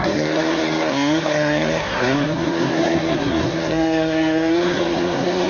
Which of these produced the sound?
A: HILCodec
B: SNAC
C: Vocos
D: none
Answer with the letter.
B